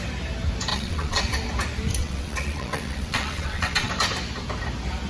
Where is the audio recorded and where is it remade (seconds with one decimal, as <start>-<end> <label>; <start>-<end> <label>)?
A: 0.0-0.7 recorded; 0.7-1.2 remade; 1.2-2.0 recorded; 2.0-3.9 remade; 3.9-5.1 recorded